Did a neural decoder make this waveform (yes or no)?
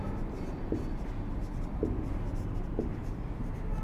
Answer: no